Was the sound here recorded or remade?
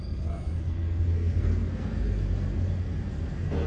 remade